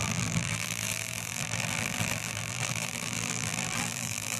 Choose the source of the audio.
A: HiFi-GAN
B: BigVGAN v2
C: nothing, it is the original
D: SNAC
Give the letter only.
B